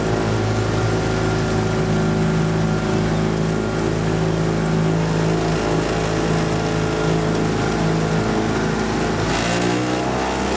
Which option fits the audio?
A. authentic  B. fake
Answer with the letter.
A